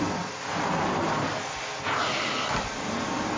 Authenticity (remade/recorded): recorded